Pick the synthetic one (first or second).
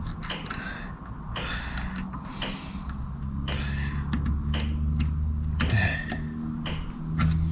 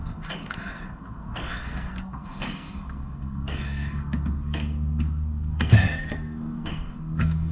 second